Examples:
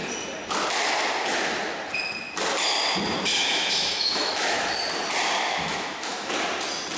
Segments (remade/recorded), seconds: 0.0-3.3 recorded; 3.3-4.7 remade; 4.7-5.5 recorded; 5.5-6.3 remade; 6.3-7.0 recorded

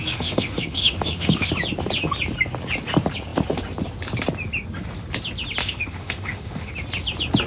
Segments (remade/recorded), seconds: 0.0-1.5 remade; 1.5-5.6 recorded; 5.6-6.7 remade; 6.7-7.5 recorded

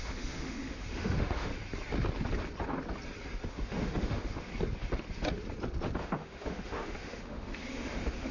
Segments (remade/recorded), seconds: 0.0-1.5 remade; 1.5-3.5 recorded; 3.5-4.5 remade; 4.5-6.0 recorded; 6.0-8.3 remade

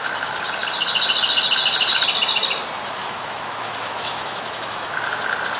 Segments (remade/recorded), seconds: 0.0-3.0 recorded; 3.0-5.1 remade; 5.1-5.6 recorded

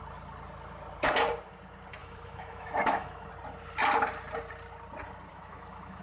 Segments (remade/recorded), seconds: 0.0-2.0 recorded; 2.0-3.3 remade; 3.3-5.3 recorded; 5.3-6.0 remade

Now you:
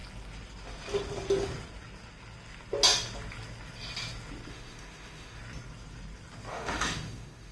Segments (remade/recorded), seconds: 0.0-4.5 recorded; 4.5-5.4 remade; 5.4-6.5 recorded; 6.5-7.5 remade

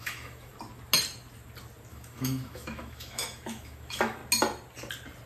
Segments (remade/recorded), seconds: 0.0-0.5 remade; 0.5-1.9 recorded; 1.9-4.2 remade; 4.2-5.3 recorded